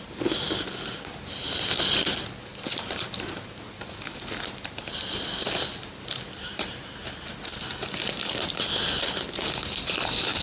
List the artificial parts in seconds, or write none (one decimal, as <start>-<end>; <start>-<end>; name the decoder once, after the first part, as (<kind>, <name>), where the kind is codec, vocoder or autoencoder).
2.5-7.1 (vocoder, BigVGAN v2)